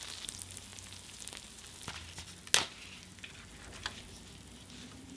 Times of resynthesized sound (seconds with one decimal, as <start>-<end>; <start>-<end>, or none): none

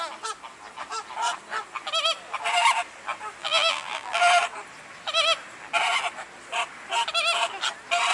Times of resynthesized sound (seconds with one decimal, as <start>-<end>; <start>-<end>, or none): 3.4-4.2

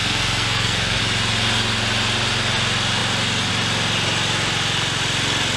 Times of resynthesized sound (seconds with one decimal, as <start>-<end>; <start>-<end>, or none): 0.0-1.0